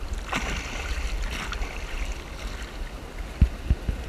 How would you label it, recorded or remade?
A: recorded